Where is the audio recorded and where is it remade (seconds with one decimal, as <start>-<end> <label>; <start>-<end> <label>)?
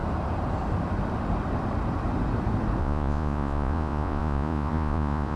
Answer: 0.0-2.8 recorded; 2.8-5.4 remade